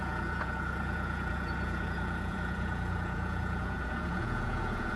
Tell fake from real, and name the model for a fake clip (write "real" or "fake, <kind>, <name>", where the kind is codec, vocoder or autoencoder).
fake, vocoder, Vocos